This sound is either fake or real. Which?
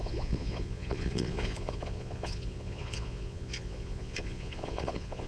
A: fake